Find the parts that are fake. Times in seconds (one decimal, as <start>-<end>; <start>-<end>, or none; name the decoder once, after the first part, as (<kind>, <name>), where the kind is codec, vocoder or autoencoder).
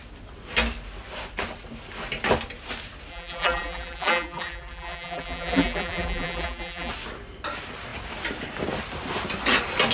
3.1-6.9 (vocoder, BigVGAN v2)